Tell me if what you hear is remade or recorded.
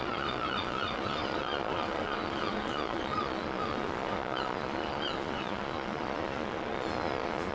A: remade